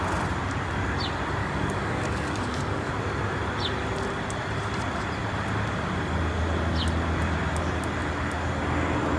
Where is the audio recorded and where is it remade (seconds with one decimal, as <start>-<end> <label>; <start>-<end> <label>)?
0.0-1.4 recorded; 1.4-2.9 remade; 2.9-9.2 recorded